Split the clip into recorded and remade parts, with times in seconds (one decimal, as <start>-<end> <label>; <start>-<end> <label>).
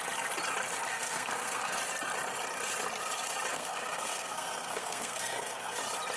0.0-0.9 recorded; 0.9-1.8 remade; 1.8-3.5 recorded; 3.5-5.8 remade; 5.8-6.2 recorded